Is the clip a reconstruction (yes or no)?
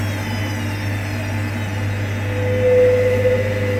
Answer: no